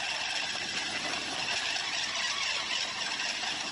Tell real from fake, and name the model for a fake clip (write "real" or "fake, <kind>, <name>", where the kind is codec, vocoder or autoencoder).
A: real